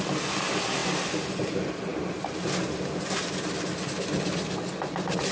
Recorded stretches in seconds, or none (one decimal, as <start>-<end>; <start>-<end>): 0.0-5.3